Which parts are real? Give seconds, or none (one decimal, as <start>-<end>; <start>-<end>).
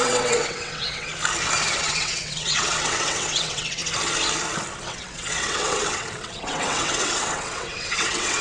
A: 1.1-1.8; 3.8-4.8